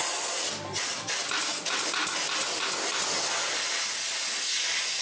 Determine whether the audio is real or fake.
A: real